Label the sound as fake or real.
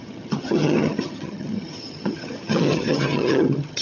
fake